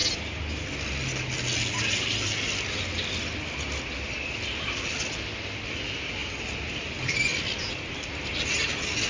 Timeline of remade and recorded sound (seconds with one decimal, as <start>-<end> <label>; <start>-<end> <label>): 0.0-9.1 recorded